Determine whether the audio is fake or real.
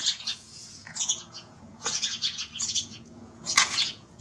fake